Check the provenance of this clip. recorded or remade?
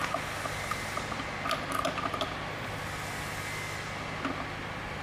recorded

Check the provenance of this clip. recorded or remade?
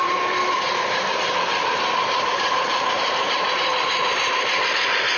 remade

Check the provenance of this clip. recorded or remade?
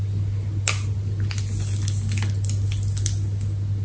recorded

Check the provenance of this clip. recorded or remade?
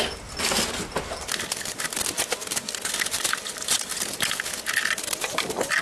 recorded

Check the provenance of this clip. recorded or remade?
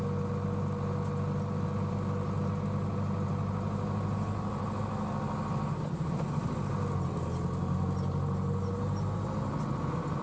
recorded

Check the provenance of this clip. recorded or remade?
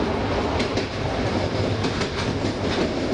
recorded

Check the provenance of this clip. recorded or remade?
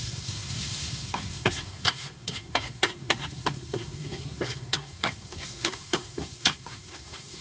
remade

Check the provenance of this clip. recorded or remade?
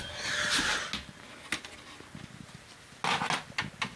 recorded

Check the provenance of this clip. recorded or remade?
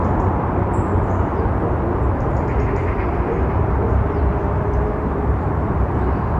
remade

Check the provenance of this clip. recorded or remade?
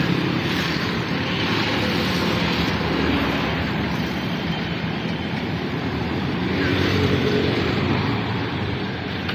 remade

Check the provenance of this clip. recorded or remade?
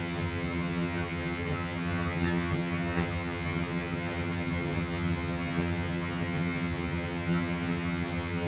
remade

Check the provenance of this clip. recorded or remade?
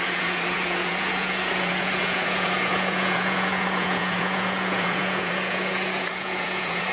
remade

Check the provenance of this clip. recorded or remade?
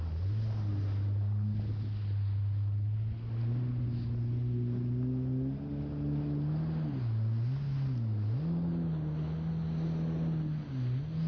recorded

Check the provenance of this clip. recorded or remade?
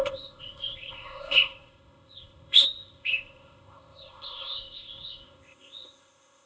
remade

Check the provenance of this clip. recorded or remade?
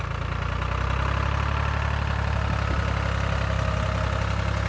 recorded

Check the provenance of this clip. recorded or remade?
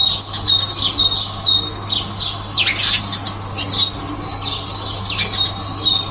recorded